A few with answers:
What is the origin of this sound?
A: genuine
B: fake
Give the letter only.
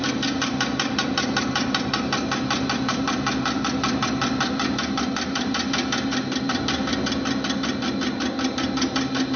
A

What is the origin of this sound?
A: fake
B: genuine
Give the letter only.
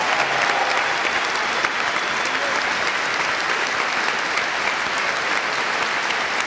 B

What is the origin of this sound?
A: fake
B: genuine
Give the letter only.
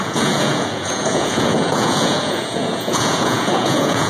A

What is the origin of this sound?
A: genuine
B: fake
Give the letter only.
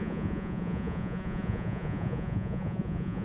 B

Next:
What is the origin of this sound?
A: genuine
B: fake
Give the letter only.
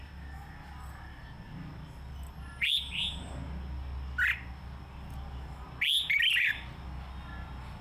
A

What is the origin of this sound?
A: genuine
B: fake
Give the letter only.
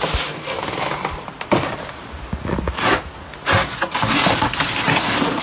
A